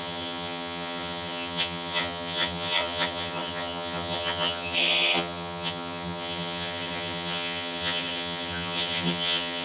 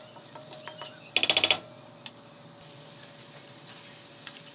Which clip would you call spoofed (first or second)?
first